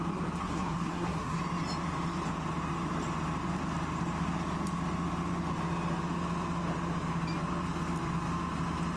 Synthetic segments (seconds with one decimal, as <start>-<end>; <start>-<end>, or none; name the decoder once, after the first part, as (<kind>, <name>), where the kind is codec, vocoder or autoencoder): 0.4-1.4 (codec, SNAC)